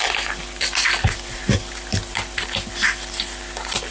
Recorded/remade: recorded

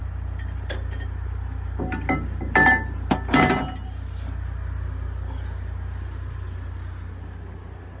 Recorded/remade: recorded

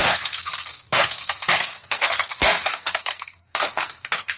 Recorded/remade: remade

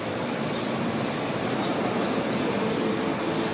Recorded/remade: recorded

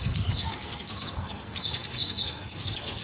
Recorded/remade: remade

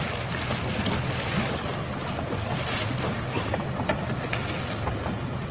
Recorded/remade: recorded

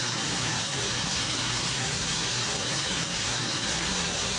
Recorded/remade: remade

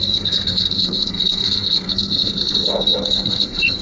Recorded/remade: remade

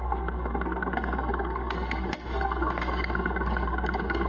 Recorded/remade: remade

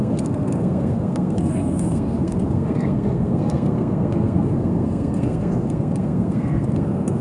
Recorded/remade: remade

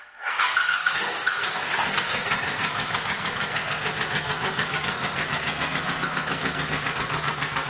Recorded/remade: remade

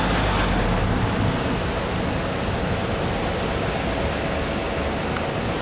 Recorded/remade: recorded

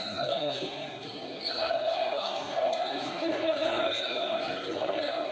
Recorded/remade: remade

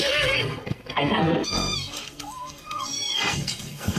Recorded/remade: remade